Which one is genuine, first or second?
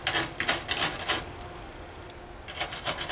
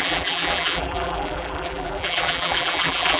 first